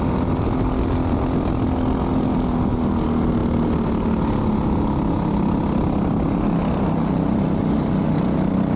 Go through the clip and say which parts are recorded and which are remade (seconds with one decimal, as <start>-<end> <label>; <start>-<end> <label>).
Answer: 0.0-8.8 recorded